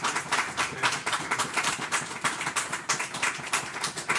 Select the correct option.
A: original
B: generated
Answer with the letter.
B